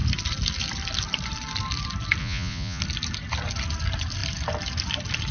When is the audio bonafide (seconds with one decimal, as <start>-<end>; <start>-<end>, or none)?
0.0-2.2; 2.8-5.3